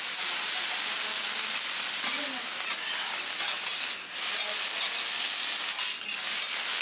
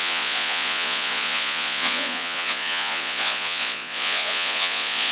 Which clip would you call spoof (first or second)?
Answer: second